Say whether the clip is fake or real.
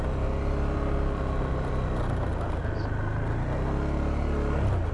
real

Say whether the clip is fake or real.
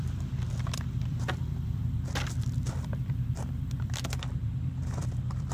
fake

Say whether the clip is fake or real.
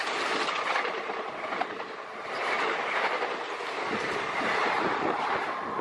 real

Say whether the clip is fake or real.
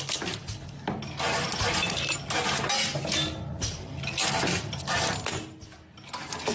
real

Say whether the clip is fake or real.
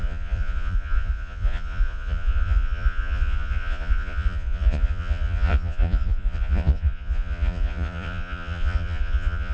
fake